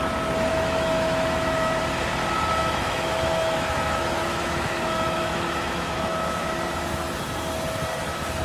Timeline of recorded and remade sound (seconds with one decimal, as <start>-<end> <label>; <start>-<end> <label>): 0.0-0.5 recorded; 0.5-1.8 remade; 1.8-2.6 recorded; 2.6-6.5 remade; 6.5-8.4 recorded